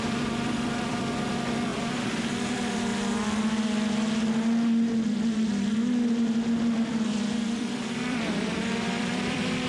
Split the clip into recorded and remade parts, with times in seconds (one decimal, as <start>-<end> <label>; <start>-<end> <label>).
0.0-2.9 remade; 2.9-6.9 recorded; 6.9-9.7 remade